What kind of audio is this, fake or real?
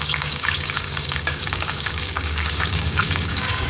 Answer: fake